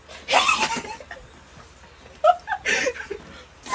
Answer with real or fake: real